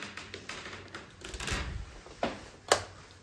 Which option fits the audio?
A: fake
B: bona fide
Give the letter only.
B